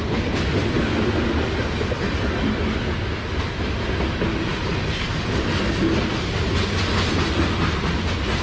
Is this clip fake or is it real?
real